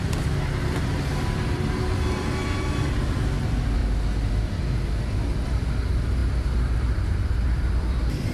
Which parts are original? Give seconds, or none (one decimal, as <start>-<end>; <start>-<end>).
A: 3.8-4.3